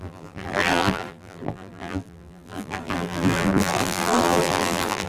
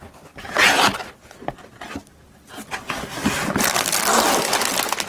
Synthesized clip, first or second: first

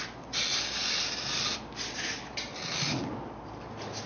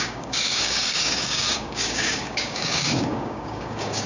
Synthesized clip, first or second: second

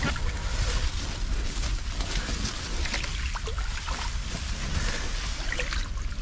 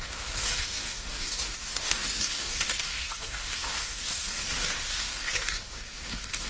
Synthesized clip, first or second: second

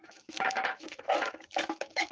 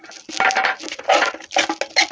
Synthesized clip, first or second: first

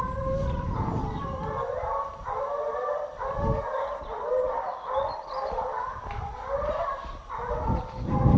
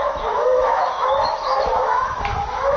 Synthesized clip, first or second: second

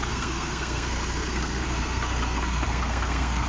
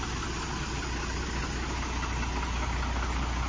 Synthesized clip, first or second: first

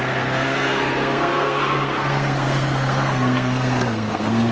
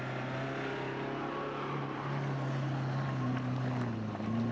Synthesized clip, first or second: first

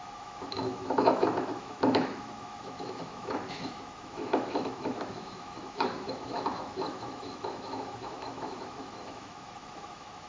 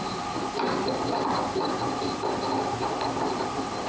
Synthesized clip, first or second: first